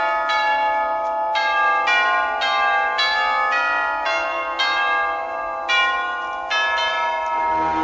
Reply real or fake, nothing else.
real